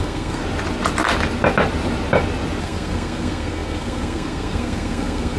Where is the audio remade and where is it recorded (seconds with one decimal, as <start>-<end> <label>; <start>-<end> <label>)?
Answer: 0.0-0.4 remade; 0.4-2.6 recorded; 2.6-5.4 remade